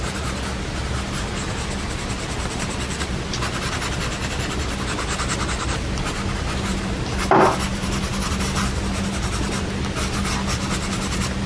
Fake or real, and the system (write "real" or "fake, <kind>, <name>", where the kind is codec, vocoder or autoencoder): real